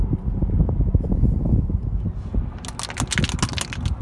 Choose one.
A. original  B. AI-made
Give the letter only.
A